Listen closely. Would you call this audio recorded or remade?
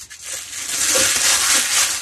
recorded